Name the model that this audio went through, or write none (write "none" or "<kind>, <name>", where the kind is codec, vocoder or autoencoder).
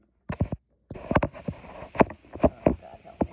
none